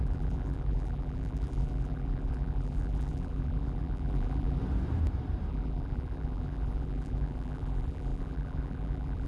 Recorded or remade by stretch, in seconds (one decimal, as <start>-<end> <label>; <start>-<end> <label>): 0.0-4.6 remade; 4.6-5.5 recorded; 5.5-9.3 remade